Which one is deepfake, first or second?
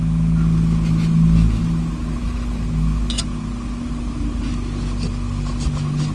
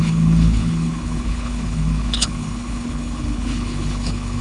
second